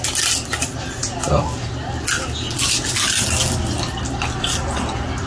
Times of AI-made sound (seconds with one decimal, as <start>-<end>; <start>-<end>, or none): none